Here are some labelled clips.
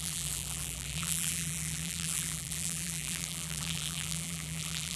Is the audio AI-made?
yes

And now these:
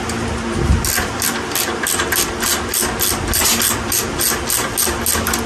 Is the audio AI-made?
no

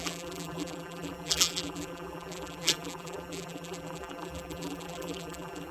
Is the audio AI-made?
yes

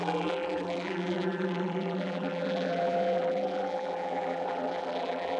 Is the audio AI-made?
yes